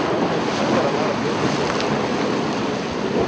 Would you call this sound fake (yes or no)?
no